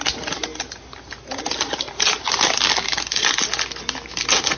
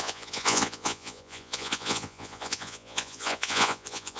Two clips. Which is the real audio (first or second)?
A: first